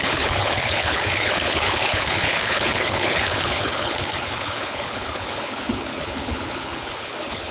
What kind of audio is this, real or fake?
fake